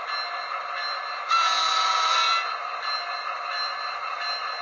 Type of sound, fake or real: real